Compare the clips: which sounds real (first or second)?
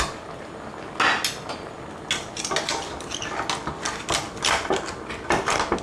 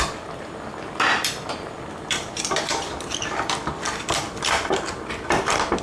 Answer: first